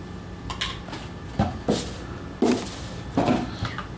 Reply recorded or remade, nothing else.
recorded